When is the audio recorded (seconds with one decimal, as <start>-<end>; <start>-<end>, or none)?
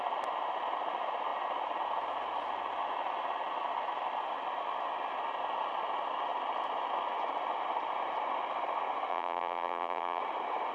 0.0-9.1; 10.2-10.7